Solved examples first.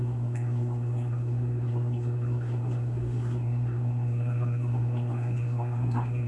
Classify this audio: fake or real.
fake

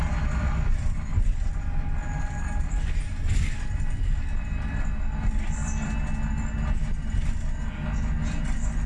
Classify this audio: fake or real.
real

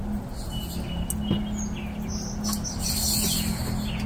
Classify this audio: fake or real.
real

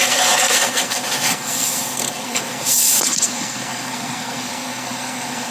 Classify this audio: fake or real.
fake